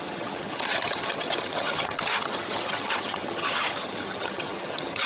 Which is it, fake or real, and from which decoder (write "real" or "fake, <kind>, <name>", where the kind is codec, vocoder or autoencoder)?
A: fake, vocoder, HiFi-GAN